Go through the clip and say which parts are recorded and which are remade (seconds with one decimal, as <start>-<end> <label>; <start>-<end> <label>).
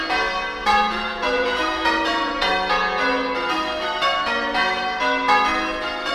0.0-0.7 recorded; 0.7-2.5 remade; 2.5-6.1 recorded